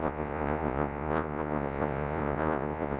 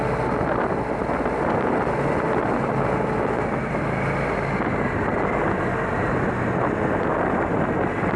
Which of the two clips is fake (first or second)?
first